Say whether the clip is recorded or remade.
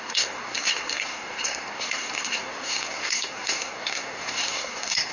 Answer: remade